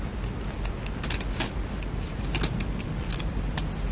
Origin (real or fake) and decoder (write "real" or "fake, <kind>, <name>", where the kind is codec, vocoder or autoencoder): real